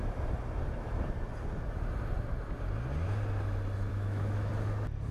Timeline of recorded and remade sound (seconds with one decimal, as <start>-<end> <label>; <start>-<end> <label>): 0.0-3.9 recorded; 3.9-4.5 remade; 4.5-5.1 recorded

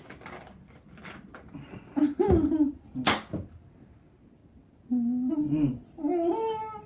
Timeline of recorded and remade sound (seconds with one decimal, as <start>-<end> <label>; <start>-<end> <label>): 0.0-6.9 recorded

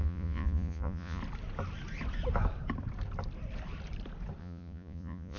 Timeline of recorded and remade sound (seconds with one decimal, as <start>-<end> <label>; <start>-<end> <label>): 0.0-1.2 remade; 1.2-4.4 recorded; 4.4-5.4 remade

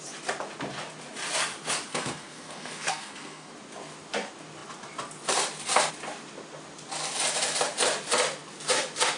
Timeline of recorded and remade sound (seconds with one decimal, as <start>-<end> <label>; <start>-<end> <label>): 0.0-1.9 recorded; 1.9-3.5 remade; 3.5-9.2 recorded